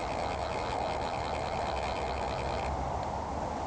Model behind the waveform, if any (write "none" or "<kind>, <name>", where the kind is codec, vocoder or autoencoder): none